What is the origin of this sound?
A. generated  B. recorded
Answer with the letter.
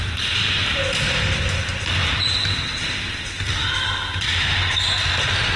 B